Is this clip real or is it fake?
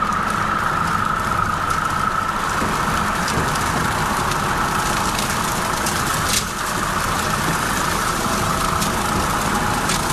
real